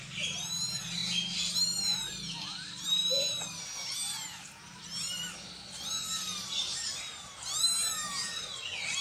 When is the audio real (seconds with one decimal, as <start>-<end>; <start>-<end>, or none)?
0.0-9.0

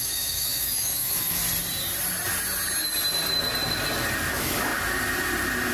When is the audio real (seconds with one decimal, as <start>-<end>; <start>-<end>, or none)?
1.4-4.3; 4.7-5.7

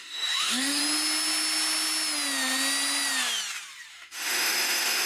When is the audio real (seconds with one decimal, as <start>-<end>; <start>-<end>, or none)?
0.8-3.9

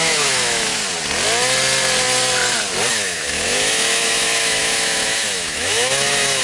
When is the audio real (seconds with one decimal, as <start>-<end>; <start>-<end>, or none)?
0.8-2.9